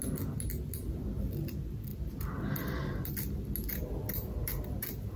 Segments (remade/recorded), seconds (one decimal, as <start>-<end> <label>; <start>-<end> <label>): 0.0-5.2 recorded